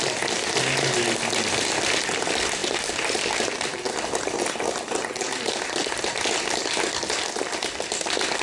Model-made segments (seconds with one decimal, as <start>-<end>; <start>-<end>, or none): 2.6-3.8